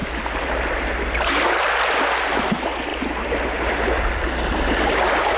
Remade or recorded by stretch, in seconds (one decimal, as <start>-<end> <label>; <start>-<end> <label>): 0.0-5.4 recorded